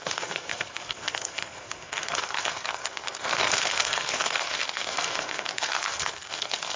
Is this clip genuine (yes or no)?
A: no